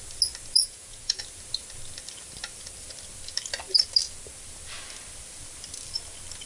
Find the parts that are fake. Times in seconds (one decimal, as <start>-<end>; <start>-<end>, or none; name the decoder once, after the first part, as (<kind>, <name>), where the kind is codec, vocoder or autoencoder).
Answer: 0.6-1.2 (vocoder, Vocos)

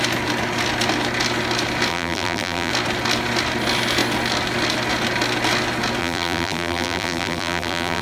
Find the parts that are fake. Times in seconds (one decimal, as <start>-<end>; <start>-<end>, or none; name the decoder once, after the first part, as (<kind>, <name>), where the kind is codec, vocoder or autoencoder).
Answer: 1.9-2.7 (vocoder, BigVGAN v2); 6.0-8.0

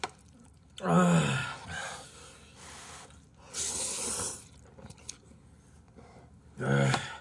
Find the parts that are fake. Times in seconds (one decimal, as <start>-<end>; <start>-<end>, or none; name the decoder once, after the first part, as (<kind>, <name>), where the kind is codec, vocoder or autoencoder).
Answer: none

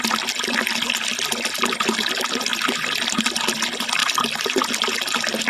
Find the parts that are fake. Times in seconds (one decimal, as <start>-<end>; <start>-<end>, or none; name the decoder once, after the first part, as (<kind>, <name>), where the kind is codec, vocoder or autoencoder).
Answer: none

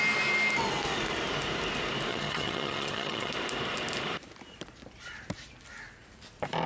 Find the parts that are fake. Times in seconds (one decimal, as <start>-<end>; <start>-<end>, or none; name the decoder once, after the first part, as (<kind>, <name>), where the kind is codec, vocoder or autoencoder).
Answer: 2.1-3.3 (vocoder, HiFi-GAN)

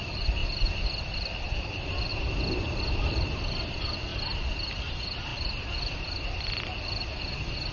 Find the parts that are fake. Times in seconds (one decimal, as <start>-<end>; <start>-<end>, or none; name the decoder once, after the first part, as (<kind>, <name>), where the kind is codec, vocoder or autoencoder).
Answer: 0.0-0.4 (vocoder, BigVGAN v2); 1.0-2.1; 2.8-4.1; 4.8-7.7

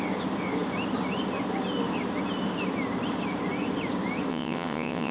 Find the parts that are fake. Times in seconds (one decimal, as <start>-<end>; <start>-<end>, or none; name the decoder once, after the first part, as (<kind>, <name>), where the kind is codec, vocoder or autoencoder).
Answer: 4.3-5.1 (vocoder, WaveNeXt)